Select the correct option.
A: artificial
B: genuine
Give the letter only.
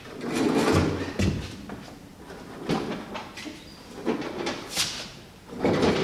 B